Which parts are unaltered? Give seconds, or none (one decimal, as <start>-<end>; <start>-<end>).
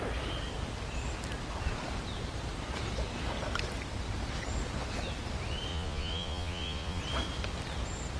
0.0-5.7; 7.0-8.2